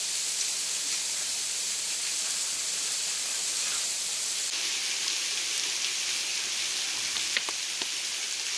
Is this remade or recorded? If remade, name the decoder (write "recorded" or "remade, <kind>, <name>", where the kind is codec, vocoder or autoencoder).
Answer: recorded